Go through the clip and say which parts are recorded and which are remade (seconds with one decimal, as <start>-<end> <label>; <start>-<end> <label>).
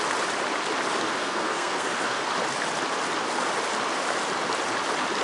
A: 0.0-1.2 recorded; 1.2-2.2 remade; 2.2-5.2 recorded